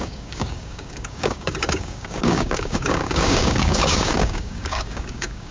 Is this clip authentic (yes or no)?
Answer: no